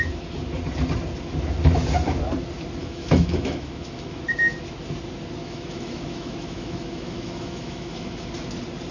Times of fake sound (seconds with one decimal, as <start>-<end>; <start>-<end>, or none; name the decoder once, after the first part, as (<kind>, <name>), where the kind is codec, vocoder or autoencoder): 2.8-4.2 (autoencoder, DAC-VAE); 5.4-8.3